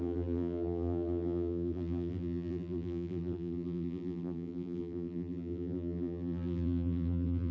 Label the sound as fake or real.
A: fake